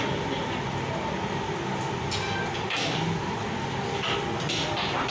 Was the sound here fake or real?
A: real